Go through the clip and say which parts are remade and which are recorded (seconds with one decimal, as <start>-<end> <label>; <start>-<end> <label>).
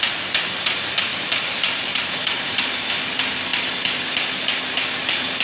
0.0-1.1 recorded; 1.1-2.9 remade; 2.9-5.4 recorded